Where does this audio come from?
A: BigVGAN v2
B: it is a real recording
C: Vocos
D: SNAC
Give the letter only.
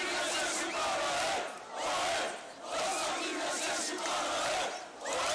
B